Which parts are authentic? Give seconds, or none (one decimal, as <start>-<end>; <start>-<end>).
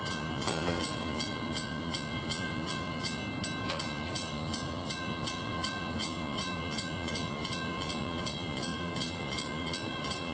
3.2-3.7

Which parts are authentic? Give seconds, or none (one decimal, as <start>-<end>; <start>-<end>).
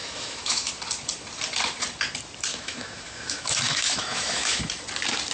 0.7-2.5; 4.6-5.3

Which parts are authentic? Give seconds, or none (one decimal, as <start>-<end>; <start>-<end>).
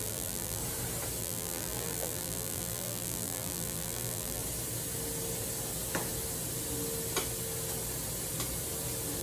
0.6-1.2; 4.4-9.2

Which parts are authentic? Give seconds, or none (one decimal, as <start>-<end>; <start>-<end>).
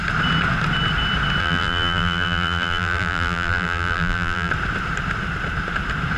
0.0-1.4; 4.5-6.2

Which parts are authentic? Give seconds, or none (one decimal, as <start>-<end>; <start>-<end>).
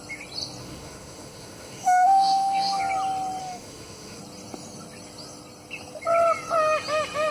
0.0-0.6; 2.8-3.4; 4.2-7.3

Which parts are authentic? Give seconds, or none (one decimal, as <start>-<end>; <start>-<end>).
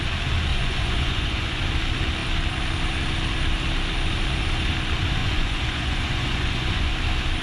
0.0-0.5; 1.6-5.2; 6.9-7.4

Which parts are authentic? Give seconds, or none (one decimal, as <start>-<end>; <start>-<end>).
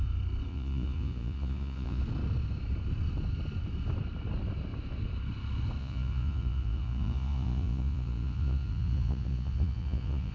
0.0-0.5; 2.0-5.8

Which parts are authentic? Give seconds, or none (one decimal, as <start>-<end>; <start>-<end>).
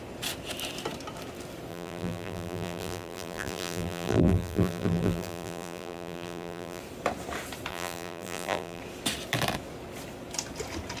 0.0-1.7; 6.8-7.7; 8.8-11.0